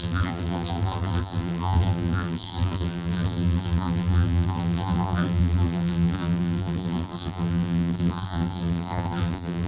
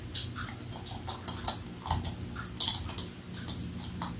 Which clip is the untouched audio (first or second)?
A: second